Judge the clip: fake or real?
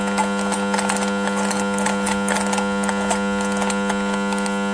real